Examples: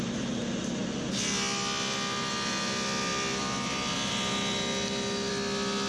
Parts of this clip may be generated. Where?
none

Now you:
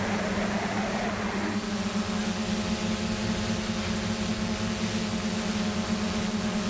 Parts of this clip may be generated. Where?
none

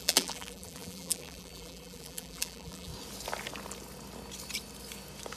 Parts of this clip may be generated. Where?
0.0-2.9 (vocoder, BigVGAN v2)

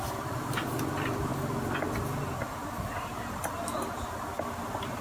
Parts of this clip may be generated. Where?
0.0-1.3 (vocoder, BigVGAN v2); 4.3-5.0

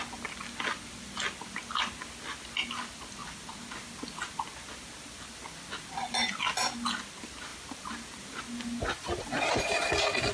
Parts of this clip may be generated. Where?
none

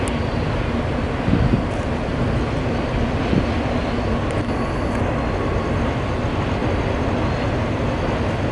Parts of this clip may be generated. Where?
none